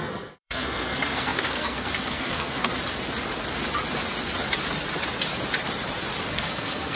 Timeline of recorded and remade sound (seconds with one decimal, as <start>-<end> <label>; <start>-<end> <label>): 0.0-2.7 remade; 2.7-6.3 recorded; 6.3-7.0 remade

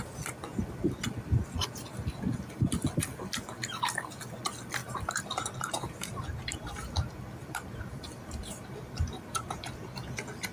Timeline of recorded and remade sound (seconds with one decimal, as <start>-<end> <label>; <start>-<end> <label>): 0.0-4.8 recorded; 4.8-9.7 remade; 9.7-10.5 recorded

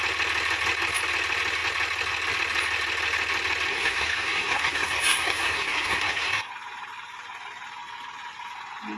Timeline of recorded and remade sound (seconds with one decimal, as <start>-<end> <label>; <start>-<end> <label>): 0.0-3.7 recorded; 3.7-6.5 remade; 6.5-9.0 recorded

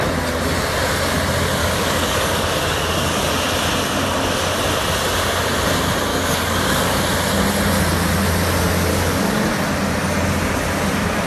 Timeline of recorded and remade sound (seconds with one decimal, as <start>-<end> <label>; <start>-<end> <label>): 0.0-1.6 recorded; 1.6-3.3 remade; 3.3-6.1 recorded; 6.1-7.0 remade; 7.0-8.9 recorded; 8.9-9.5 remade; 9.5-11.3 recorded

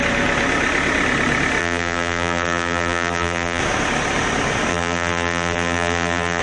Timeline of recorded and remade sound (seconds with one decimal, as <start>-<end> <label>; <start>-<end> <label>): 0.0-1.6 recorded; 1.6-3.6 remade; 3.6-4.7 recorded; 4.7-6.4 remade